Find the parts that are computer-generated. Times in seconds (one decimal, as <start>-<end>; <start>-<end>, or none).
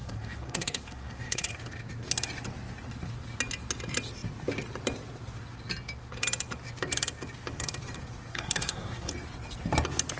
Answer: 0.0-1.5; 8.3-9.1